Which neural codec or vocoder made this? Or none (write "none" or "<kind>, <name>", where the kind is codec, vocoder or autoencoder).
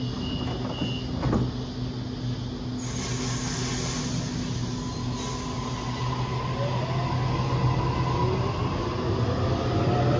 none